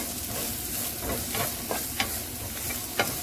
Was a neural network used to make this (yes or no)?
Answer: no